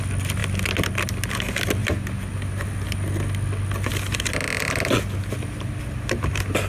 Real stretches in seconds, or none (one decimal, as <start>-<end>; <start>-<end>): 0.0-6.7